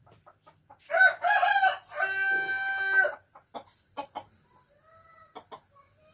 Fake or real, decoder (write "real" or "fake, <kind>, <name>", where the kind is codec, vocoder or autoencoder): real